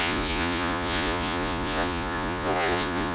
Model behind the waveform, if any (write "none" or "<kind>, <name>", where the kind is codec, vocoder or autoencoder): vocoder, Vocos